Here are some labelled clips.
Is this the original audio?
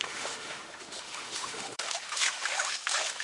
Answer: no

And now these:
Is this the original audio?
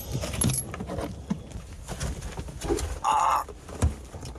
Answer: yes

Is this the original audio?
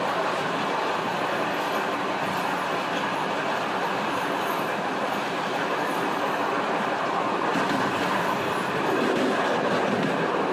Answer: yes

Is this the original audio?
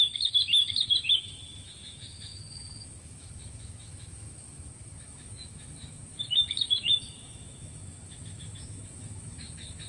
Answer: no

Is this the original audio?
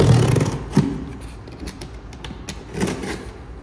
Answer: yes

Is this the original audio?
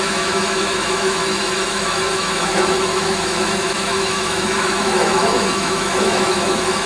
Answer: no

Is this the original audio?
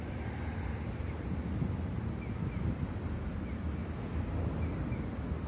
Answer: yes